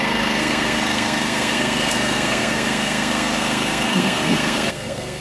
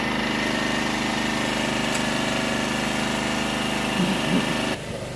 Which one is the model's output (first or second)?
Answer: first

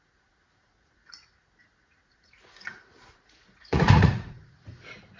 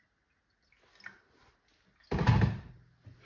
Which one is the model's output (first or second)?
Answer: first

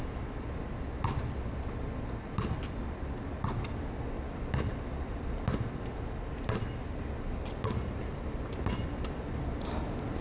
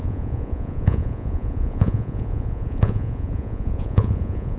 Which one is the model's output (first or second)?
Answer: second